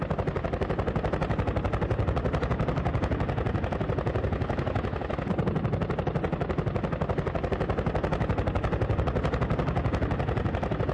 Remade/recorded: recorded